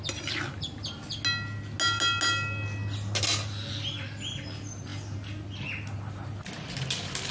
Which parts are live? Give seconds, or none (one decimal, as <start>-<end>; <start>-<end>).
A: 0.0-7.3